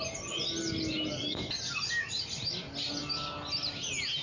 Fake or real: real